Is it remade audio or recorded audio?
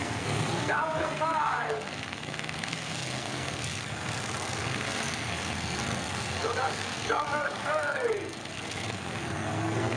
remade